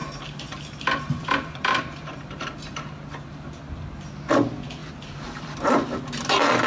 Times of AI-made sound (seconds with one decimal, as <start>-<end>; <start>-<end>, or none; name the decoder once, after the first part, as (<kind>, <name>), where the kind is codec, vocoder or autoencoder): 0.0-3.6 (vocoder, BigVGAN v2); 4.8-6.0